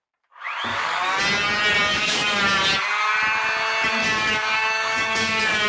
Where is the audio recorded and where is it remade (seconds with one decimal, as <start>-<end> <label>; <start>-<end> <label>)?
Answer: 0.0-0.7 recorded; 0.7-1.2 remade; 1.2-1.9 recorded; 1.9-2.4 remade; 2.4-4.0 recorded; 4.0-5.7 remade